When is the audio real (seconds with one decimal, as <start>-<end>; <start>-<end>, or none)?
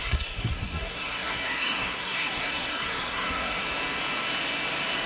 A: 3.6-5.1